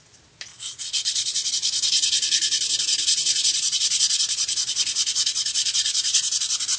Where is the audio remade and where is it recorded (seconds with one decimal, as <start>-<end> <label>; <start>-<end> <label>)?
0.0-0.5 recorded; 0.5-1.5 remade; 1.5-3.1 recorded; 3.1-6.3 remade; 6.3-6.8 recorded

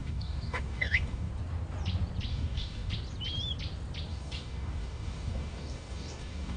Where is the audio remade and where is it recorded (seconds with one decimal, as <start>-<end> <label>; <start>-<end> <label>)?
0.0-1.3 remade; 1.3-2.3 recorded; 2.3-2.9 remade; 2.9-4.1 recorded; 4.1-6.6 remade